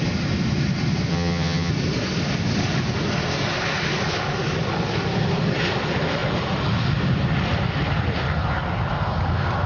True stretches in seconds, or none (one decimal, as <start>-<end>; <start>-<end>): 0.0-1.1; 1.7-9.7